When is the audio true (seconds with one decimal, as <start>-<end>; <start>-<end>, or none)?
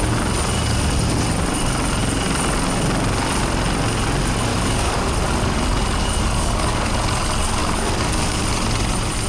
0.0-4.5; 5.1-6.0; 6.9-7.6; 8.4-9.3